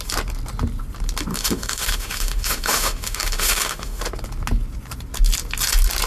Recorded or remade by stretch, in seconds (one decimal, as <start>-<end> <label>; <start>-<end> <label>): 0.0-1.3 recorded; 1.3-4.0 remade; 4.0-6.1 recorded

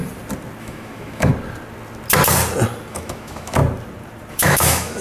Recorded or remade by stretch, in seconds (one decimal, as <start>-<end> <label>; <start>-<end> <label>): 0.0-0.6 recorded; 0.6-1.3 remade; 1.3-2.9 recorded; 2.9-3.6 remade; 3.6-4.3 recorded; 4.3-5.0 remade

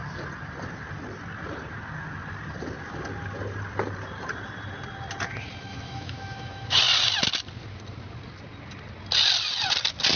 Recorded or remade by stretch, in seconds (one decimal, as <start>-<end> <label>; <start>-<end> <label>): 0.0-5.7 recorded; 5.7-6.8 remade; 6.8-10.2 recorded

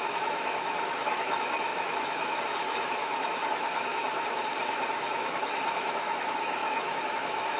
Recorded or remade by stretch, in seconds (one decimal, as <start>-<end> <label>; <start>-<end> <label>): 0.0-7.6 remade

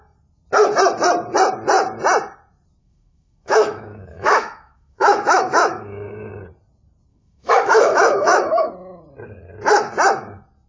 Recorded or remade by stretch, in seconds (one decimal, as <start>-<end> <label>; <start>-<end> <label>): 0.0-2.8 recorded; 2.8-6.3 remade; 6.3-7.1 recorded; 7.1-8.7 remade; 8.7-10.7 recorded